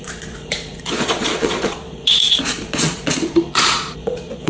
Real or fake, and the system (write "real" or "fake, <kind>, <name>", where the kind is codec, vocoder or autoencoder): fake, vocoder, Vocos